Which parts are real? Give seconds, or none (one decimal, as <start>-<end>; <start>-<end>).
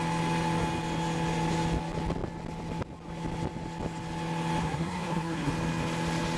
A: 0.0-4.6; 5.5-6.4